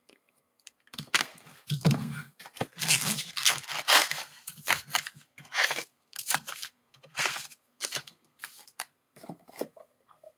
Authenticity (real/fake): fake